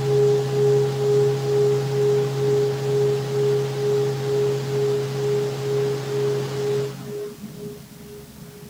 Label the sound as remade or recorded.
recorded